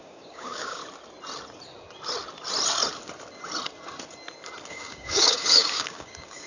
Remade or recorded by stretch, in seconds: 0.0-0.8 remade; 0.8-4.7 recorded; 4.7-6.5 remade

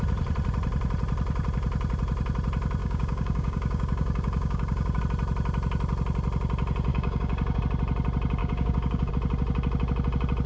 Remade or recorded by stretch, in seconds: 0.0-2.8 recorded; 2.8-5.0 remade; 5.0-6.9 recorded; 6.9-7.6 remade; 7.6-8.4 recorded; 8.4-9.1 remade; 9.1-10.5 recorded

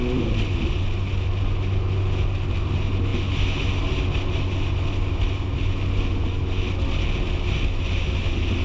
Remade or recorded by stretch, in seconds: 0.0-8.6 recorded

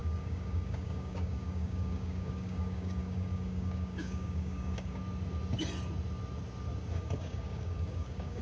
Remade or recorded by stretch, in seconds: 0.0-5.0 remade; 5.0-6.9 recorded; 6.9-8.4 remade

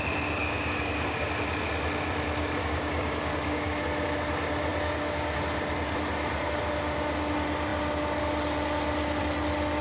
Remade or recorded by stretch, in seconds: 0.0-0.4 recorded; 0.4-1.3 remade; 1.3-2.6 recorded; 2.6-3.8 remade; 3.8-4.7 recorded; 4.7-5.4 remade; 5.4-9.8 recorded

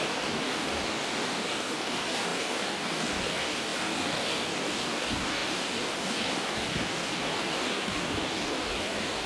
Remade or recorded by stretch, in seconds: 0.0-9.3 remade

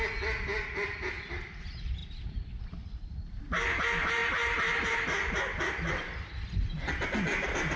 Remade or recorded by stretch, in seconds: 0.0-7.8 recorded